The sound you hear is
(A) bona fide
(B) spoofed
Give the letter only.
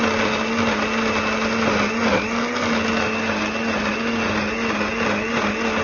A